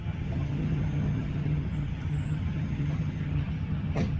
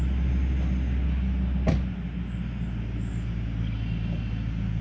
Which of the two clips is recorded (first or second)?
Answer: second